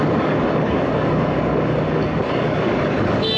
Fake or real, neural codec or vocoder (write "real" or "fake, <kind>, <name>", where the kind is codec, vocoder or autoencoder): fake, codec, DAC